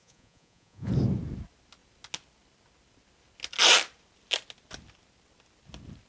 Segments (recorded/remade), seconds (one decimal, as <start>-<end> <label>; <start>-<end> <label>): 0.0-0.9 remade; 0.9-6.1 recorded